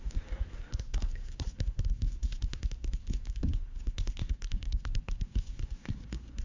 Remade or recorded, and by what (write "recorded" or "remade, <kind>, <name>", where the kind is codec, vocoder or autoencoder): remade, codec, SNAC